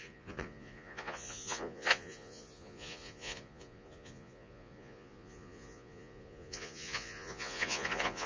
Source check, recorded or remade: remade